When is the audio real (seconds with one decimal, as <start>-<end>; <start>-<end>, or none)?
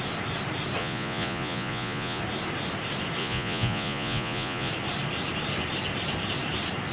0.0-0.8; 2.2-3.2; 4.7-6.9